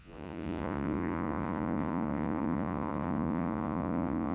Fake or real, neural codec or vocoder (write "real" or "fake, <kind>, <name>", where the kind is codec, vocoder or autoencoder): fake, vocoder, Vocos